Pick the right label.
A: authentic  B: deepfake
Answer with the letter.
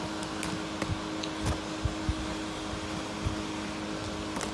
A